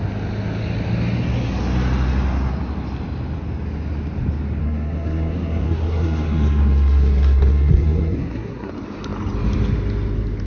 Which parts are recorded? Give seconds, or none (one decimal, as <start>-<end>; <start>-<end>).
0.0-4.6; 8.7-10.5